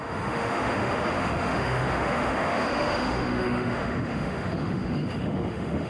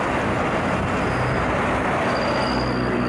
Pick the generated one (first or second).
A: first